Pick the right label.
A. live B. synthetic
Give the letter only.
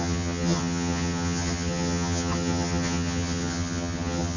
B